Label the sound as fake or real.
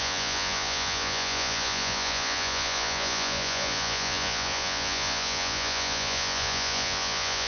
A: fake